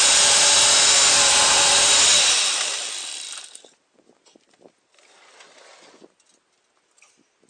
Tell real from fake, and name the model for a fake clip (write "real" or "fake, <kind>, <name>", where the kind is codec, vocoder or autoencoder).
real